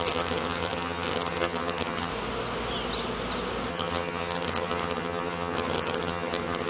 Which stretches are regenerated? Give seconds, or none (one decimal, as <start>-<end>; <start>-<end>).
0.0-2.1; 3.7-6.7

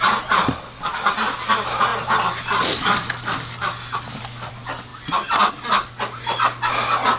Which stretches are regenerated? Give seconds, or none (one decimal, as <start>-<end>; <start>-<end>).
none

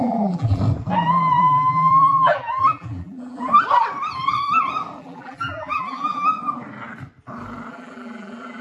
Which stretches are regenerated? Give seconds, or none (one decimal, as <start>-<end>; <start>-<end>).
0.0-0.6; 1.4-3.5; 5.0-6.3; 7.7-8.6

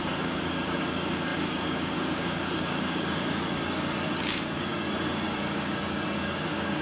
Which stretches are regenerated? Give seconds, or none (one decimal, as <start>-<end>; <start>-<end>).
0.0-6.8

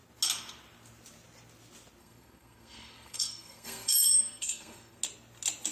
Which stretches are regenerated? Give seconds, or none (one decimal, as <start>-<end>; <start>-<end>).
2.0-5.0

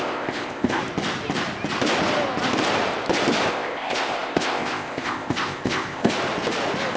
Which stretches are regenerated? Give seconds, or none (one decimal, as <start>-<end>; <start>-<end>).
0.0-0.8; 3.5-6.1

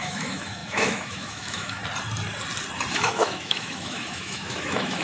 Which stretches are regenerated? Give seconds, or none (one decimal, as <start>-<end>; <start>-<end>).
0.0-1.8; 2.9-5.0